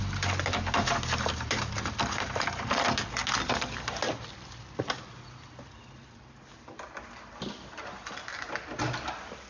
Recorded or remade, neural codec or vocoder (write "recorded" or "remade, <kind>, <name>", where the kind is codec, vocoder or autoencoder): recorded